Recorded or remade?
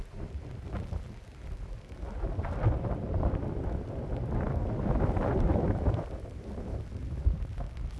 recorded